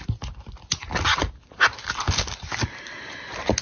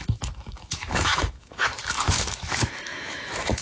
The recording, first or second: first